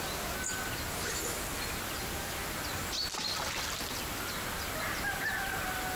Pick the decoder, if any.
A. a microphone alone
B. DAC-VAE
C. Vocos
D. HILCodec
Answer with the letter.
A